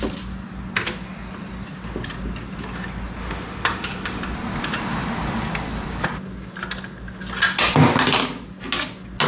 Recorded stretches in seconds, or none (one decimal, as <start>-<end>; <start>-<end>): 0.0-3.2; 4.2-9.3